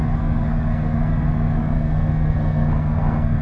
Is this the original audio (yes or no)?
no